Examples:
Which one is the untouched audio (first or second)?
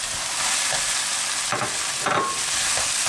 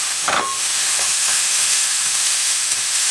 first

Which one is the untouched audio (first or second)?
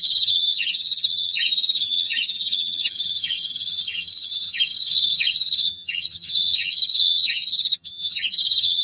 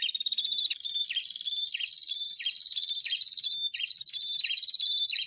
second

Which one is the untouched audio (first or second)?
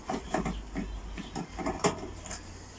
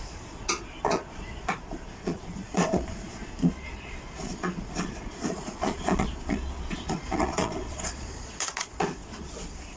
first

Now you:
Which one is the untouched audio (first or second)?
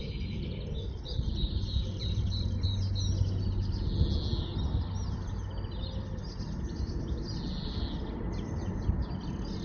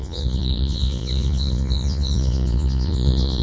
first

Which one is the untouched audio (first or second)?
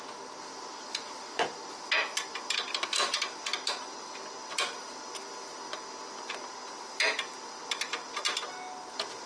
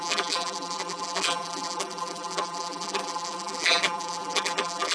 first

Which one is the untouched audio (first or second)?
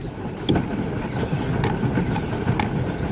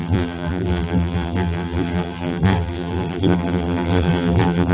first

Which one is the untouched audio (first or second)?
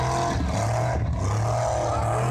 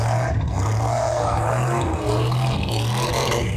first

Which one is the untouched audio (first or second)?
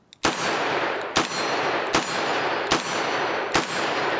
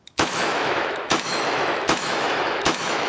first